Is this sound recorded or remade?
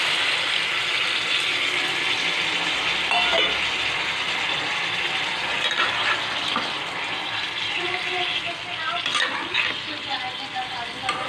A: recorded